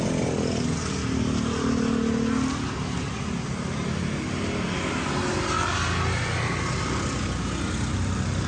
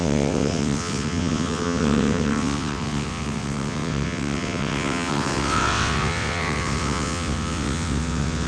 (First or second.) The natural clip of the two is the first